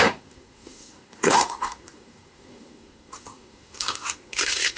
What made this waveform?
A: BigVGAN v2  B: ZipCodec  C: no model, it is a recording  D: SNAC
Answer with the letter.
D